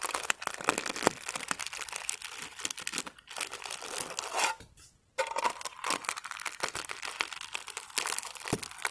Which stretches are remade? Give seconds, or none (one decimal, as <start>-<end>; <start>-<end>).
none